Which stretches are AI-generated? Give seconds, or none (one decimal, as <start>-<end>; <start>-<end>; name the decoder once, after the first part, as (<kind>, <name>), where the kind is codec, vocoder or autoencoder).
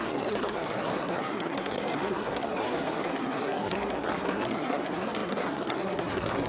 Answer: 0.0-6.5 (codec, SNAC)